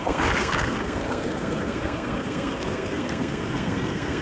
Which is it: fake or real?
fake